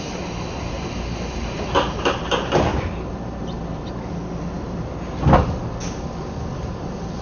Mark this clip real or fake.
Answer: real